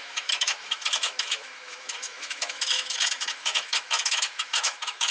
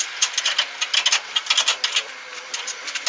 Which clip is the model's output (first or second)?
first